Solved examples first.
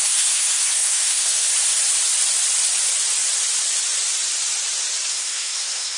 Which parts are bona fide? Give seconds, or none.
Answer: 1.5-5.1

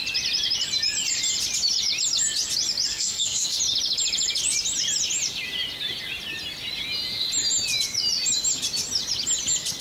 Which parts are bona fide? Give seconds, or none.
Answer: 0.0-2.9; 3.6-9.8

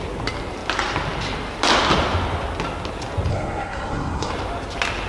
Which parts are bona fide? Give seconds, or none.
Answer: 0.0-3.3; 4.3-5.1

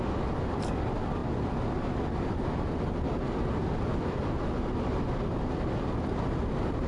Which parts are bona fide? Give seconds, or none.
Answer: 0.0-6.9